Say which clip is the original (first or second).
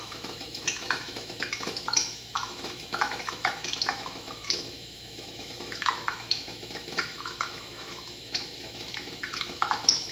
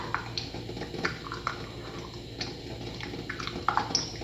second